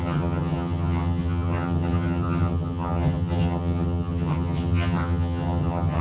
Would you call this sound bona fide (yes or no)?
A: no